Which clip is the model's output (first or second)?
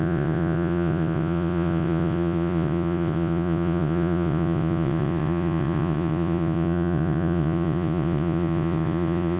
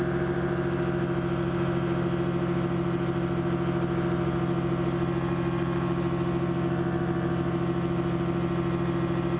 first